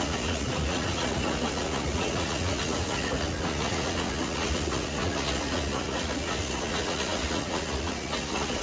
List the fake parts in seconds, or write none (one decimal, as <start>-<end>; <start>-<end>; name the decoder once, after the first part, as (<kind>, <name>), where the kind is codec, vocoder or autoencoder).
0.0-8.6 (vocoder, Vocos)